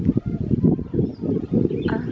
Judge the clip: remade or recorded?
recorded